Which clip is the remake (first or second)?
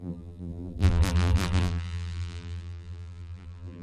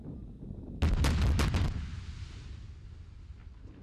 first